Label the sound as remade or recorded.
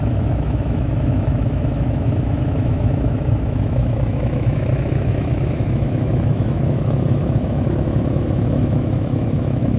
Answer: remade